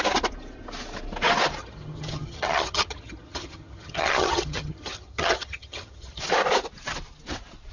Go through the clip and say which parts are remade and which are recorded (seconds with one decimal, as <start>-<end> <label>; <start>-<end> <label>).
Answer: 0.0-1.6 recorded; 1.6-6.2 remade; 6.2-7.7 recorded